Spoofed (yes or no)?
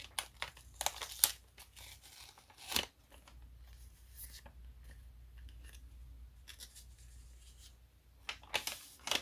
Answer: no